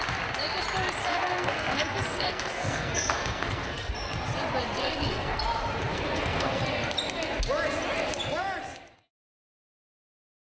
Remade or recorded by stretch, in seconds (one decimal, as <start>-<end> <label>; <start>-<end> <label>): 0.0-1.0 recorded; 1.0-3.9 remade; 3.9-4.8 recorded; 4.8-5.4 remade; 5.4-5.9 recorded; 5.9-6.6 remade; 6.6-10.5 recorded